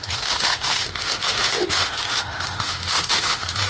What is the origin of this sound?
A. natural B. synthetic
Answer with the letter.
B